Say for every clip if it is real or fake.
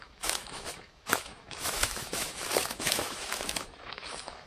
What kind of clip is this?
fake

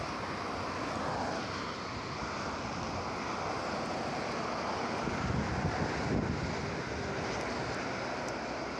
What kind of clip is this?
real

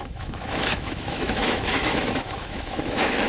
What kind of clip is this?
fake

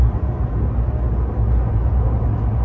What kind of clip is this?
real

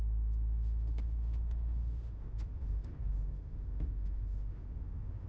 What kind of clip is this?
fake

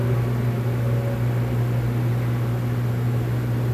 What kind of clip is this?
real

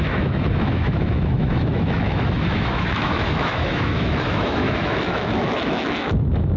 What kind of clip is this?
fake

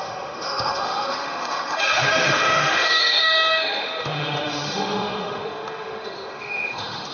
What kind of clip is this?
fake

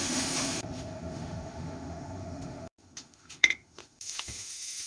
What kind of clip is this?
fake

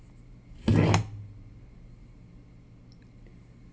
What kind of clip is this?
real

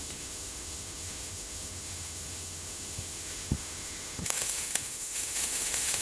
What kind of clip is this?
fake